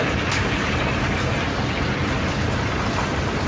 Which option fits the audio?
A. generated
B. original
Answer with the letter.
B